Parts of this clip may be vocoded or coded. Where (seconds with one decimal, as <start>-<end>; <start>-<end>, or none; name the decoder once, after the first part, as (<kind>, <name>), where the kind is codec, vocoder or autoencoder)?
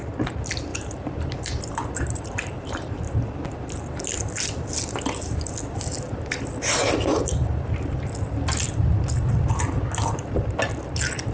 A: 0.7-2.9 (vocoder, BigVGAN v2)